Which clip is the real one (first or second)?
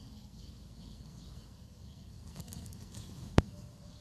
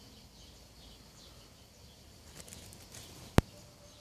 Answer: second